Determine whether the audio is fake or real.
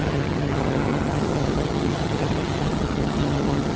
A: fake